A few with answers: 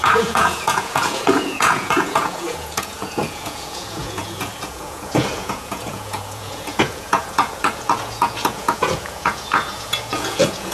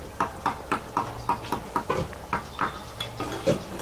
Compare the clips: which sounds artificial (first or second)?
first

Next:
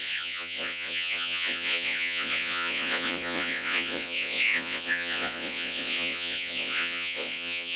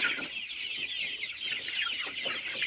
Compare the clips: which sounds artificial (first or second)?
first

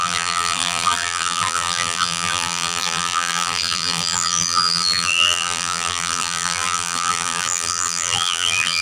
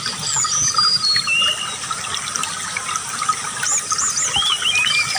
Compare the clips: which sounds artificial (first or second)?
first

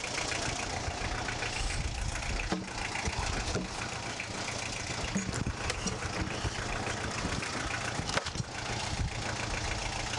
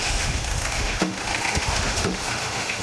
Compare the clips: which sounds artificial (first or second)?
second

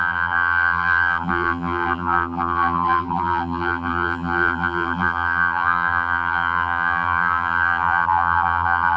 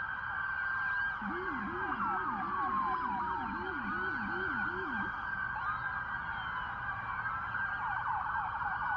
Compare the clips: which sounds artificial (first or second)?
first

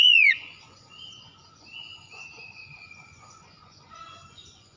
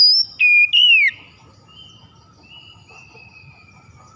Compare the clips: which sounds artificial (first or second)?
first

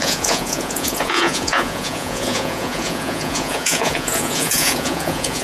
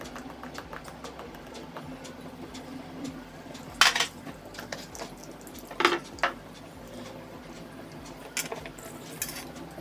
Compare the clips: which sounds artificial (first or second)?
first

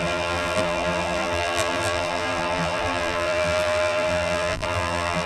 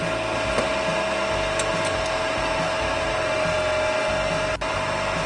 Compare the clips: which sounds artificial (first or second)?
first